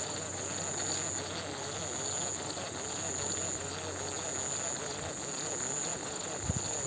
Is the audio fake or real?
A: real